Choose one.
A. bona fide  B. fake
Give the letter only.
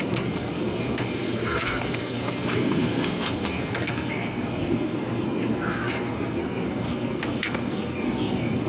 B